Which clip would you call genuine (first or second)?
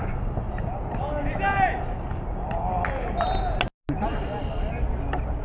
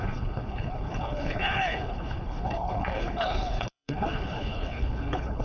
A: first